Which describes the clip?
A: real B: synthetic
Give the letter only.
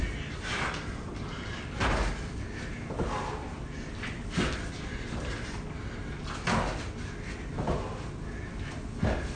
A